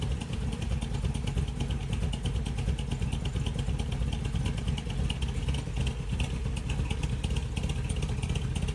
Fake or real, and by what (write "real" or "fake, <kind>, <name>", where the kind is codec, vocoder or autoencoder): real